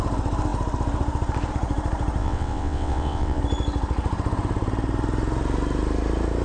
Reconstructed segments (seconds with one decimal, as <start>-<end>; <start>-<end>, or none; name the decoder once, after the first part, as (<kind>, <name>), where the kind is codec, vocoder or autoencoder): 2.2-3.4 (vocoder, WaveNeXt)